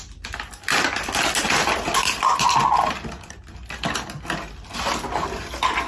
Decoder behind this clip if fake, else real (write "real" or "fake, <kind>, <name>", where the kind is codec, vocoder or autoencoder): real